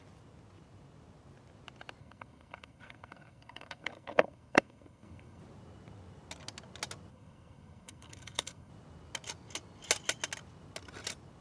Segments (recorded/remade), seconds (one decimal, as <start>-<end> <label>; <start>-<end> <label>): 0.0-2.0 recorded; 2.0-5.4 remade; 5.4-7.1 recorded; 7.1-8.7 remade; 8.7-11.4 recorded